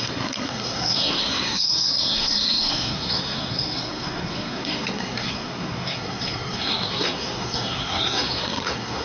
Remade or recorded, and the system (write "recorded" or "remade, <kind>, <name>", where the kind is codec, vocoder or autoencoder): remade, codec, SNAC